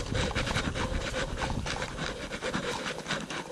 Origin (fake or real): real